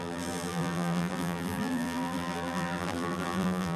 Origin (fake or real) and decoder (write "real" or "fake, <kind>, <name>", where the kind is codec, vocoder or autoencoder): fake, vocoder, BigVGAN v2